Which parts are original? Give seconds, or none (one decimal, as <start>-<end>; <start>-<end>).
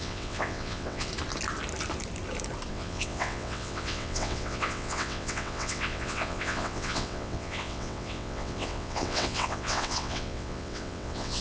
1.1-2.7